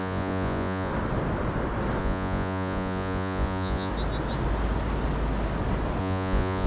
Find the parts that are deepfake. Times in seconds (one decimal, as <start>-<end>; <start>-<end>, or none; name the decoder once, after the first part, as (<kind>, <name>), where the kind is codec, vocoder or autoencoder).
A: 0.0-0.9 (vocoder, Vocos); 2.0-3.9; 6.0-6.7